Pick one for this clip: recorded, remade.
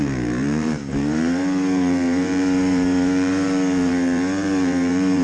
remade